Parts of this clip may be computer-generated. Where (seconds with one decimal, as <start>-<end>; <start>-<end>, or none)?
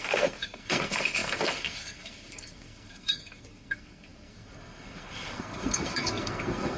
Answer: 0.0-6.8